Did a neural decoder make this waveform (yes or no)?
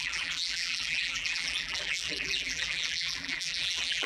yes